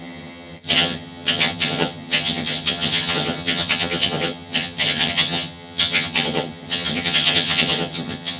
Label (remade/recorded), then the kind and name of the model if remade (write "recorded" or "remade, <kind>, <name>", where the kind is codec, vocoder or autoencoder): remade, vocoder, HiFi-GAN